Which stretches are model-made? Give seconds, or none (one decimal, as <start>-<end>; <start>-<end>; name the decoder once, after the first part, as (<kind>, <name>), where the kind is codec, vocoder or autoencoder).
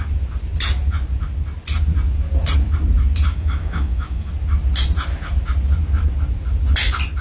3.3-4.3 (autoencoder, DAC-VAE)